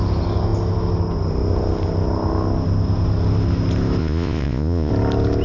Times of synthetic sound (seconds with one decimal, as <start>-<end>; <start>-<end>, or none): 4.0-4.9